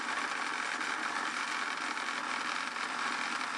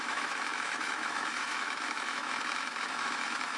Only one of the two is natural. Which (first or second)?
first